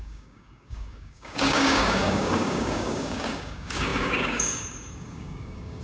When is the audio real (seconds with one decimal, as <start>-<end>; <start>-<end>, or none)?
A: none

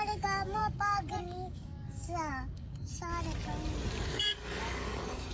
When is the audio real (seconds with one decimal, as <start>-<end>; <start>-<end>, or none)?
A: 2.9-4.1

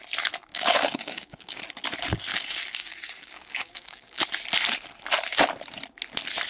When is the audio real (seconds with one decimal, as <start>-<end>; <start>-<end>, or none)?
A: 0.0-0.5; 1.6-2.3; 4.2-6.5

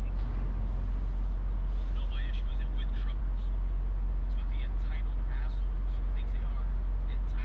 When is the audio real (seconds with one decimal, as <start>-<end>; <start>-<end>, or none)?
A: 0.0-7.4